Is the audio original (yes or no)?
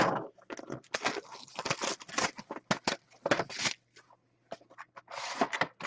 yes